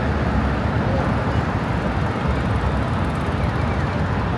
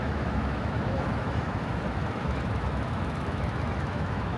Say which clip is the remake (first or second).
second